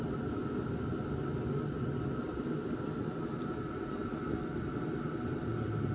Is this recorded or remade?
recorded